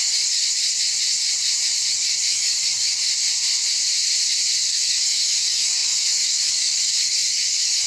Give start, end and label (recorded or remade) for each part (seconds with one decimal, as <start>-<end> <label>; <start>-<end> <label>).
0.0-0.4 remade; 0.4-1.9 recorded; 1.9-3.1 remade; 3.1-4.7 recorded; 4.7-7.9 remade